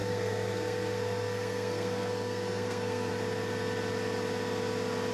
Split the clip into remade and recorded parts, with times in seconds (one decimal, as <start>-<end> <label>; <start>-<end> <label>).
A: 0.0-3.1 remade; 3.1-5.1 recorded